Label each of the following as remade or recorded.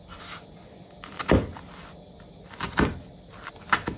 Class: recorded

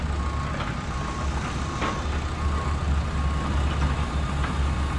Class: recorded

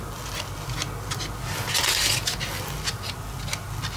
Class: recorded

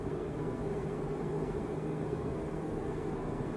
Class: remade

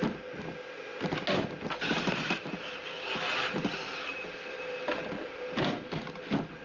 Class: recorded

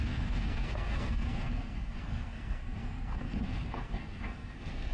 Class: remade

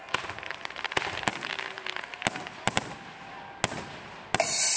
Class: recorded